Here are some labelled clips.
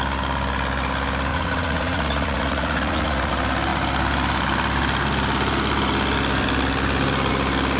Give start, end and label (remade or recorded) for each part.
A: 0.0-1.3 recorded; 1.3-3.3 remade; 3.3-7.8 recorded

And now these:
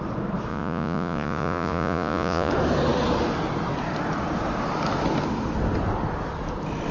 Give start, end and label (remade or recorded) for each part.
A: 0.0-0.5 recorded; 0.5-2.5 remade; 2.5-6.9 recorded

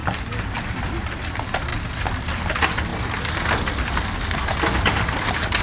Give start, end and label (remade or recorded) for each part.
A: 0.0-5.6 recorded

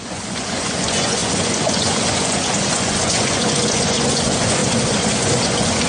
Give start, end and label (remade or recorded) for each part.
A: 0.0-5.9 remade

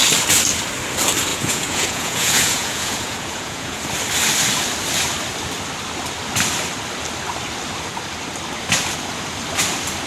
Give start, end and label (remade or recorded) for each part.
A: 0.0-1.3 recorded; 1.3-3.8 remade; 3.8-10.1 recorded

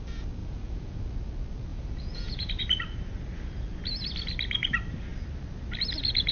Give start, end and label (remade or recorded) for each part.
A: 0.0-0.4 recorded; 0.4-1.0 remade; 1.0-1.7 recorded; 1.7-2.5 remade; 2.5-6.3 recorded

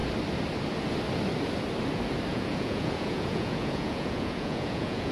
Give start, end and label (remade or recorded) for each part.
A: 0.0-2.3 recorded; 2.3-5.1 remade